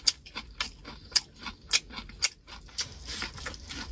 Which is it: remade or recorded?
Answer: recorded